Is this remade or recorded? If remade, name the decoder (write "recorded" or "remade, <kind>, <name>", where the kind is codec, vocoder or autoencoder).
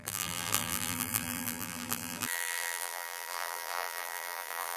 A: remade, vocoder, BigVGAN v2